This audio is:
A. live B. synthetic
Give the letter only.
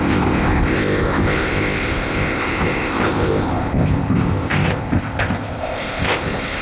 B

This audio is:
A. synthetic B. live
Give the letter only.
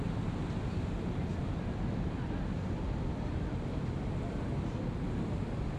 B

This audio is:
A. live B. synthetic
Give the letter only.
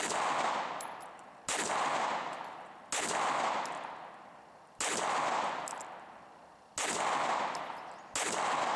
A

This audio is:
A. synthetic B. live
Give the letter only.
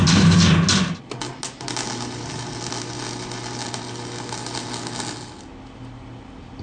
B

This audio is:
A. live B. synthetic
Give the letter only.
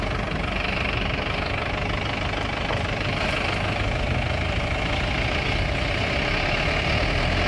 A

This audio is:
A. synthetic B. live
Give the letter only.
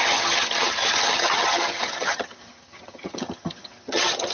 A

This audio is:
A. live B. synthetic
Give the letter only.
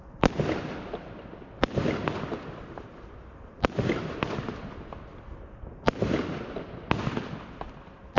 A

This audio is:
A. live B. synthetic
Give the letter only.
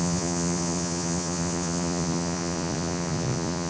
B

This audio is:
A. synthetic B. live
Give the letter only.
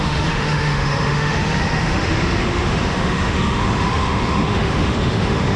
A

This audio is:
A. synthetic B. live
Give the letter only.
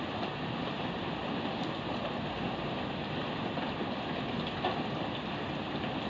B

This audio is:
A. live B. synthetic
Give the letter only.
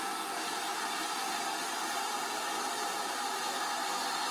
A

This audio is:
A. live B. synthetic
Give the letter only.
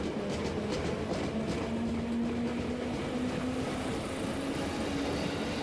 A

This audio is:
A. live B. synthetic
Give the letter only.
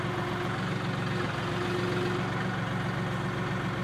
A